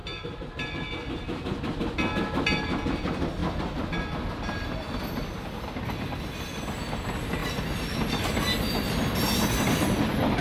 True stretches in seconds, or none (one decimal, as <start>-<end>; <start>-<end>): 0.5-7.4; 8.0-10.4